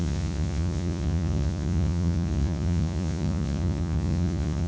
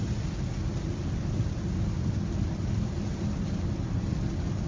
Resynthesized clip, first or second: first